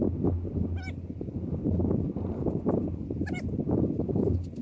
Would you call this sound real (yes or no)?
yes